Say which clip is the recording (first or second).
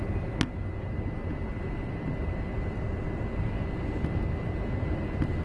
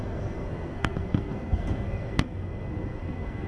first